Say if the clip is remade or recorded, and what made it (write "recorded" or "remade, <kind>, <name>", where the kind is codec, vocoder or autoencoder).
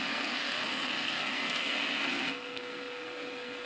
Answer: remade, codec, SNAC